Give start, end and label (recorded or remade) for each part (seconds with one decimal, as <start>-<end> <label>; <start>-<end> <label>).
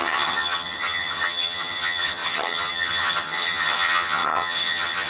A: 0.0-5.1 remade